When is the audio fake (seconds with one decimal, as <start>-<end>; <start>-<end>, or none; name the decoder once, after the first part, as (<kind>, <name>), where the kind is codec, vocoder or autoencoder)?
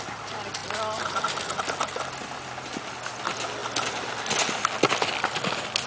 none